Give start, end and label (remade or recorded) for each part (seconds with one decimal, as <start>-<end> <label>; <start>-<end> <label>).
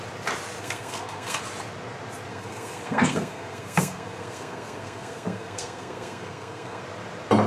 0.0-0.6 recorded; 0.6-1.4 remade; 1.4-2.3 recorded; 2.3-6.8 remade; 6.8-7.5 recorded